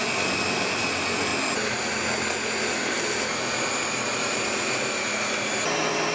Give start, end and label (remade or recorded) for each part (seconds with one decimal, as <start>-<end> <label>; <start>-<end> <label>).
0.0-6.1 recorded